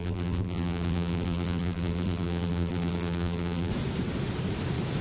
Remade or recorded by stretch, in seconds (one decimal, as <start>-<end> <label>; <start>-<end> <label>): 0.0-3.7 remade; 3.7-5.0 recorded